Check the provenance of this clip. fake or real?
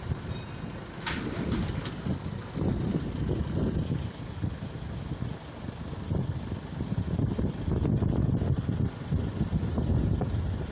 real